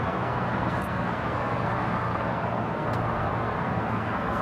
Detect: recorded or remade remade